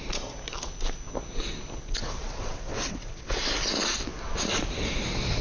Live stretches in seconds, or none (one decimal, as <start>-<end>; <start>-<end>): 0.0-1.8; 3.4-5.4